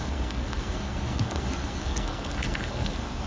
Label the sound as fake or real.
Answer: fake